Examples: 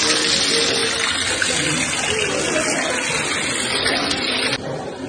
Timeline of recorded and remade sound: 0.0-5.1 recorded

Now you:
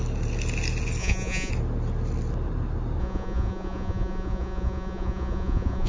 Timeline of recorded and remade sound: 0.0-1.0 recorded; 1.0-1.5 remade; 1.5-3.0 recorded; 3.0-5.9 remade

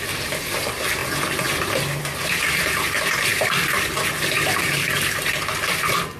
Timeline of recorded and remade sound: 0.0-6.2 recorded